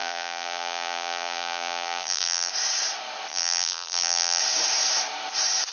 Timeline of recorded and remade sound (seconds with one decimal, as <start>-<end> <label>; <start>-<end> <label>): 0.0-2.5 remade; 2.5-3.3 recorded; 3.3-4.4 remade; 4.4-5.7 recorded